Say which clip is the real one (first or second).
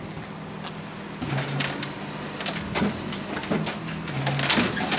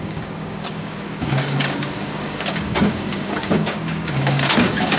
first